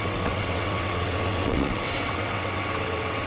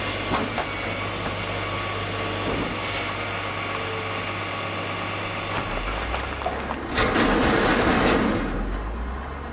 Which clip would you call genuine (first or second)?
second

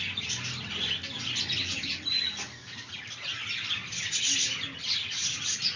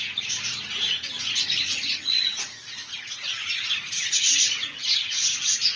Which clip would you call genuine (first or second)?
first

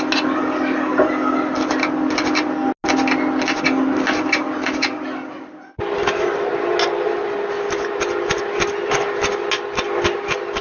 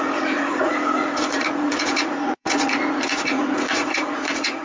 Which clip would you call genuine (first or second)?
first